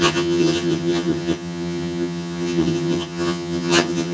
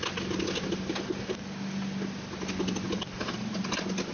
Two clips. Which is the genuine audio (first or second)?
second